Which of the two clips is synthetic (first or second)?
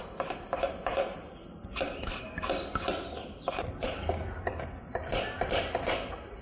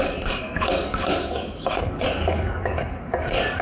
second